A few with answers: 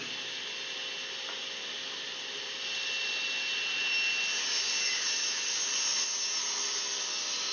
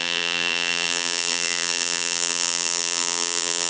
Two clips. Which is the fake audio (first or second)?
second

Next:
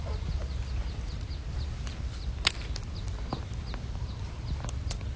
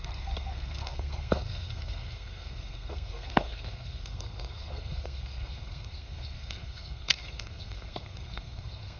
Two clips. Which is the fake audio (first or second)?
second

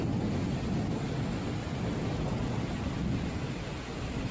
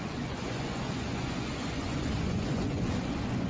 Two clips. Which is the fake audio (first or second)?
second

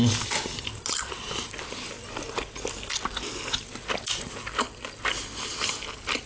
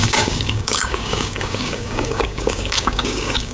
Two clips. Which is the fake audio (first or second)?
second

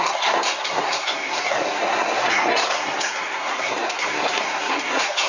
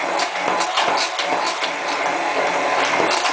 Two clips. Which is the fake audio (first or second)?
first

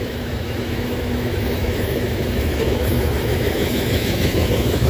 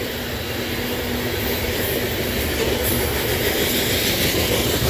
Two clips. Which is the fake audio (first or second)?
first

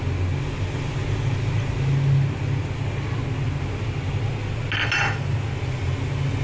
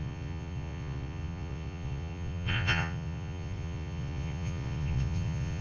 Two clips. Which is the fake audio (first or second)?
second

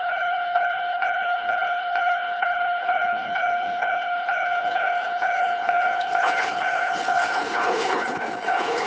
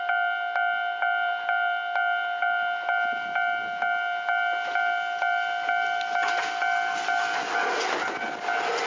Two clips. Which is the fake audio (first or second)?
first